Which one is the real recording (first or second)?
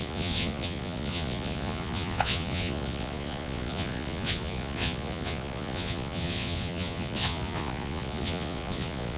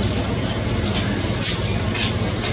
second